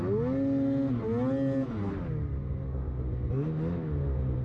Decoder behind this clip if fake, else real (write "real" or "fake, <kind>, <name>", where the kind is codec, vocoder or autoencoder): real